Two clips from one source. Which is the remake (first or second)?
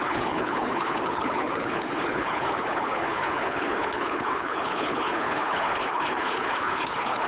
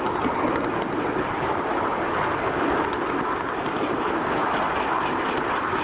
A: first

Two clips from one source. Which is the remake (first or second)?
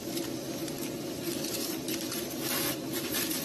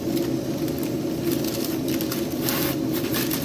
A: first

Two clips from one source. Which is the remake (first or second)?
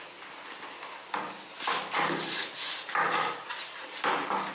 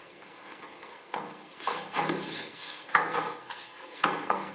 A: second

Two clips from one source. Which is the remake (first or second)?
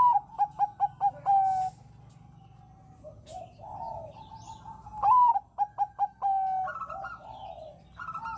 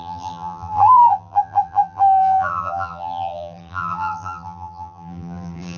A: second